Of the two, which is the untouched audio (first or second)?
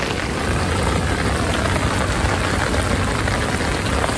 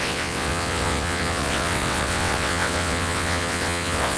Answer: first